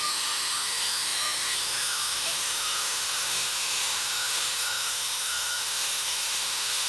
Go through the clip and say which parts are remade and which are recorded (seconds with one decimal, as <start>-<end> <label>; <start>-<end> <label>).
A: 0.0-6.9 remade